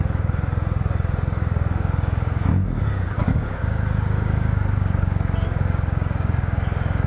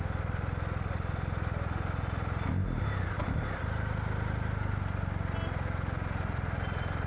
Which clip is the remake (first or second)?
first